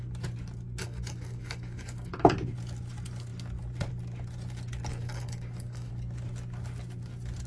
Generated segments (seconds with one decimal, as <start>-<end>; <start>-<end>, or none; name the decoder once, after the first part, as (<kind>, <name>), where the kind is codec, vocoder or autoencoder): 0.8-2.1 (codec, DAC); 4.9-5.9